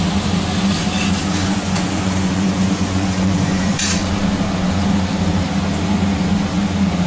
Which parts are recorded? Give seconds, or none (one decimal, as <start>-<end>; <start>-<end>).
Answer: 0.0-1.4; 3.8-7.1

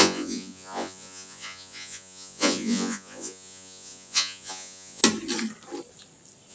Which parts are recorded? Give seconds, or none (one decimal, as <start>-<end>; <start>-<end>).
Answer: 5.0-6.5